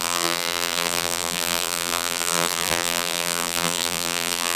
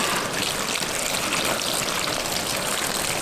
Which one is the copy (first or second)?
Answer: first